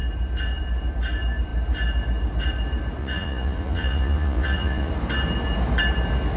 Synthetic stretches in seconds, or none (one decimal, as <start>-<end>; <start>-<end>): 3.0-4.9